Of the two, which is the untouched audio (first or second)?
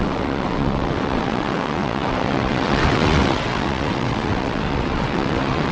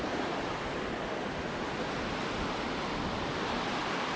second